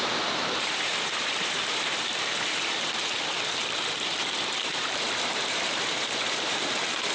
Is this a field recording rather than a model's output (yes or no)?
no